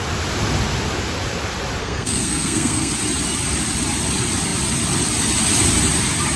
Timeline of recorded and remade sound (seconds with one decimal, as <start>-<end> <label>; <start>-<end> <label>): 0.0-1.8 recorded; 1.8-2.9 remade; 2.9-6.4 recorded